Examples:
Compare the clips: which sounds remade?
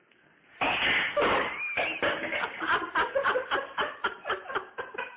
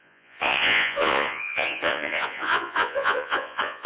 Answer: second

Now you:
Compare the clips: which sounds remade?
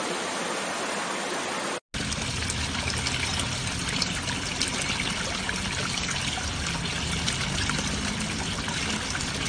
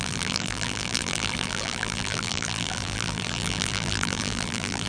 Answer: second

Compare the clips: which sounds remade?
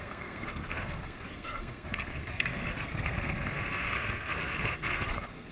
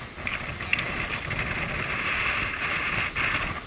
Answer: first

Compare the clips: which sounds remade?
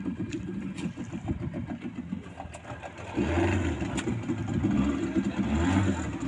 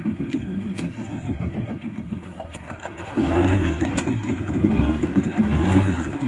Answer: second